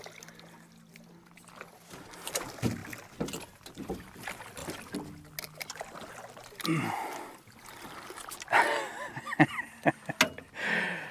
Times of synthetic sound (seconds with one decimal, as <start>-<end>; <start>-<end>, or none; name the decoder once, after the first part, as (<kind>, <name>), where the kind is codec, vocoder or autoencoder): none

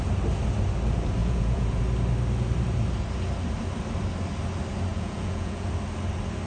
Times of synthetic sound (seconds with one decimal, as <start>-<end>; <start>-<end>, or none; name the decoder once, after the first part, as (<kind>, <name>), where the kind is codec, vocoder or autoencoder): 1.2-1.8 (vocoder, Vocos); 4.9-5.7

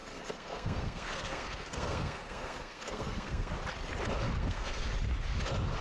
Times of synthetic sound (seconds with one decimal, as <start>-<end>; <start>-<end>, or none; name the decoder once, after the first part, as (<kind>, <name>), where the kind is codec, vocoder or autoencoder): 0.0-3.5 (codec, SNAC); 4.4-4.9